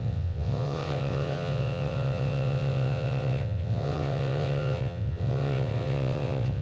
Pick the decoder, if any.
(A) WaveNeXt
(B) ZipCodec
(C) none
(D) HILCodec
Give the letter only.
A